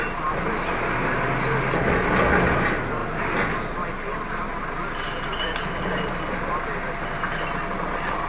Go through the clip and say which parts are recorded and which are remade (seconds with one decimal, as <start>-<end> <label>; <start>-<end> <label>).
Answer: 0.0-8.3 recorded